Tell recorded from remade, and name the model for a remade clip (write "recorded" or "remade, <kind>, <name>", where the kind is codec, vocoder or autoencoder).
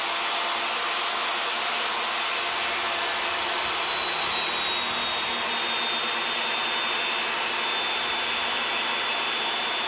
recorded